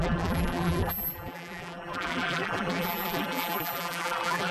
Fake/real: fake